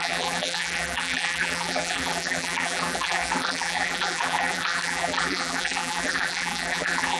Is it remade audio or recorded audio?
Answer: remade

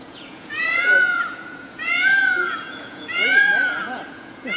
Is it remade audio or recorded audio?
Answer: remade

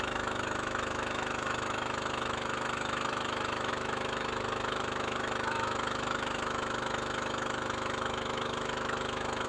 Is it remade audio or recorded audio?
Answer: remade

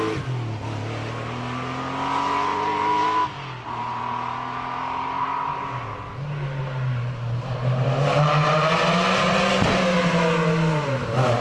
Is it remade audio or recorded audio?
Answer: recorded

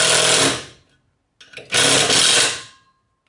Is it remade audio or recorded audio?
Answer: recorded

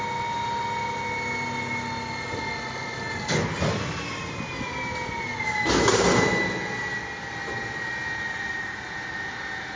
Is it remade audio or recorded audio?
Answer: recorded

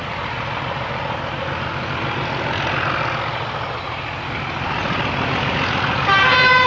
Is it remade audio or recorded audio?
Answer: recorded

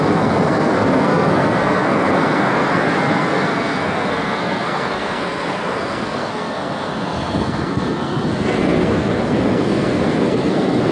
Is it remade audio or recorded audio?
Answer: remade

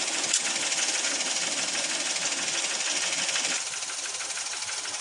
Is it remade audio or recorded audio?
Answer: recorded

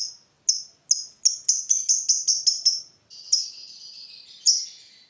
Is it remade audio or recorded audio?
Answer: recorded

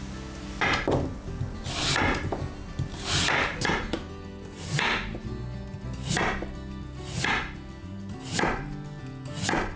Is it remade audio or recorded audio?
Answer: recorded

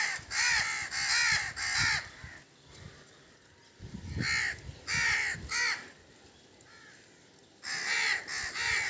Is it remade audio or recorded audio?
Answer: recorded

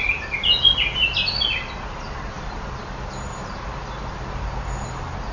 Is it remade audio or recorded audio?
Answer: recorded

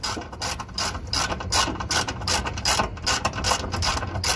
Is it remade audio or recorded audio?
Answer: recorded